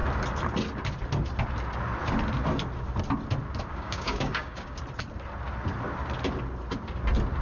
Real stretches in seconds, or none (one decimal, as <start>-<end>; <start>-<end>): 0.0-3.7; 4.8-7.4